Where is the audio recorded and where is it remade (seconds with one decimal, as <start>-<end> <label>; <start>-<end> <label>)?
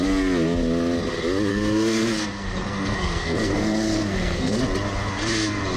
0.0-1.5 recorded; 1.5-4.6 remade; 4.6-5.8 recorded